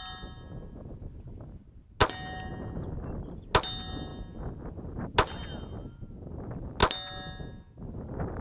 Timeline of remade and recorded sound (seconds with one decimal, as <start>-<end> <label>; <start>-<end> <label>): 0.0-8.4 recorded